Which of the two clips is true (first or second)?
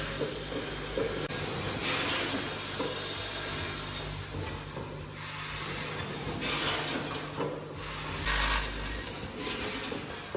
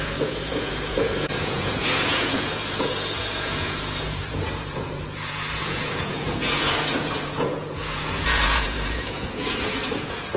first